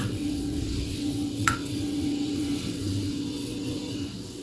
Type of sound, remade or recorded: remade